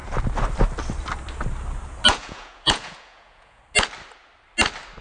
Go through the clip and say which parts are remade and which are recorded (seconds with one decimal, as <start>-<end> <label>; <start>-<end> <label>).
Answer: 0.0-2.1 recorded; 2.1-3.6 remade; 3.6-5.0 recorded